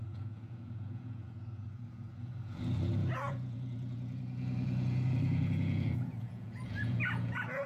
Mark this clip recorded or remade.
remade